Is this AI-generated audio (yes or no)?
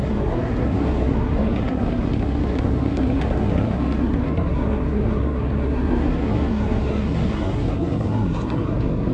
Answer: yes